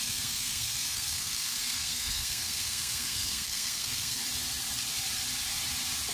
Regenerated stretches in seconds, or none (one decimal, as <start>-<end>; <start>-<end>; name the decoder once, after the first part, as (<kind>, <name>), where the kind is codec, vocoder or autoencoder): 0.0-4.2 (codec, SNAC)